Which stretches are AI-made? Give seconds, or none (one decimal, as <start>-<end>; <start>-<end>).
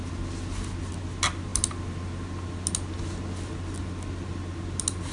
none